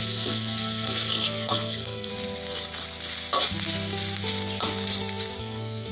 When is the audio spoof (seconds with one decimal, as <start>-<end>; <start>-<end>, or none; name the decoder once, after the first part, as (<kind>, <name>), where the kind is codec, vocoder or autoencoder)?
0.0-2.1 (codec, SNAC); 5.4-5.9